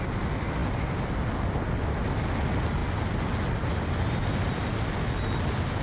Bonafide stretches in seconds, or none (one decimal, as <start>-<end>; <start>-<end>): 0.0-5.8